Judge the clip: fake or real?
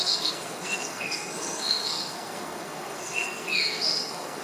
fake